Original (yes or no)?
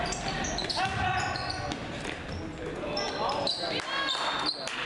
yes